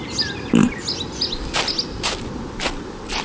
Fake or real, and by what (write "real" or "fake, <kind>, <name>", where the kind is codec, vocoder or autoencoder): real